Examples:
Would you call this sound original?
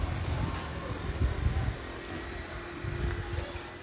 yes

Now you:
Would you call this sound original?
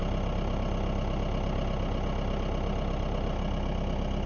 yes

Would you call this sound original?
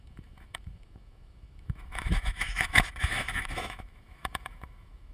no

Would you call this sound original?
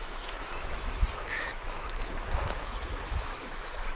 no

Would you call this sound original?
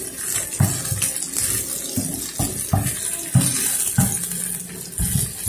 yes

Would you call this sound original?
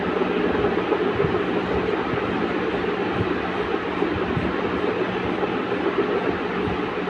yes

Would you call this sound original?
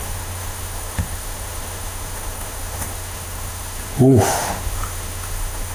no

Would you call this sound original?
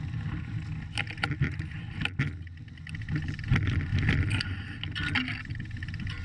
yes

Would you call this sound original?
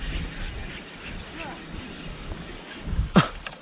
yes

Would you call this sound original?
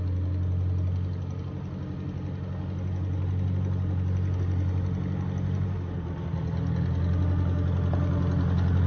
yes